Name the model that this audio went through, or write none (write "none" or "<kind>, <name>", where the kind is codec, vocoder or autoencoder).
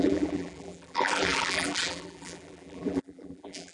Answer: vocoder, BigVGAN v2